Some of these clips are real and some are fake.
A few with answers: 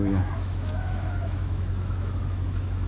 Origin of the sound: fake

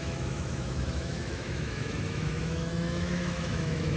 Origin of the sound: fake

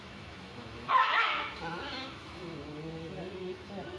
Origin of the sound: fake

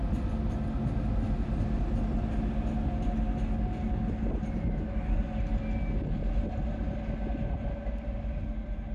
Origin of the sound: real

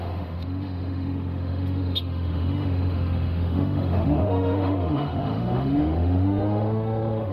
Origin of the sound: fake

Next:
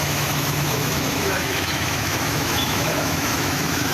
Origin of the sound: fake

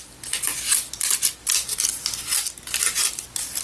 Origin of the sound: real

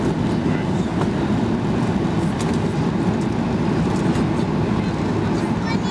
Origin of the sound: real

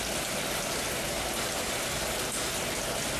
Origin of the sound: real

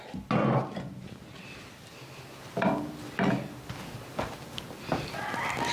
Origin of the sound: real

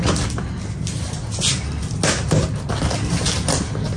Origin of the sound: real